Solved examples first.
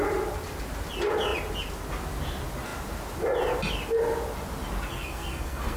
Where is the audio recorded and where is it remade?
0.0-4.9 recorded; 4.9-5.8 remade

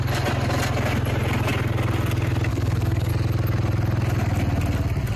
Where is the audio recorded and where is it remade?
0.0-2.5 recorded; 2.5-3.1 remade; 3.1-5.2 recorded